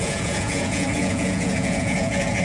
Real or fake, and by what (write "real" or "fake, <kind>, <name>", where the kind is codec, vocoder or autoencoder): fake, vocoder, Vocos